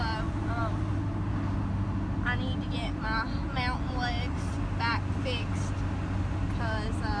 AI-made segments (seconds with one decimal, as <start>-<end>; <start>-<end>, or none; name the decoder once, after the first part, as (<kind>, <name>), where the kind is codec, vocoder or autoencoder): none